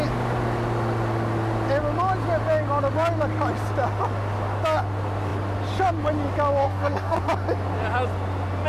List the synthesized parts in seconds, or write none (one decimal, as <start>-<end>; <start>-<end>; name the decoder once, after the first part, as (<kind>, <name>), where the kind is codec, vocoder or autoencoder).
6.6-7.2 (codec, DAC)

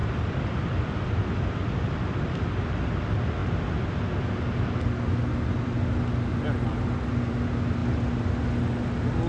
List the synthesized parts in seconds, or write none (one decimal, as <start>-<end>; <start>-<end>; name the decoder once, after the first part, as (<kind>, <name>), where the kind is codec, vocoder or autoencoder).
none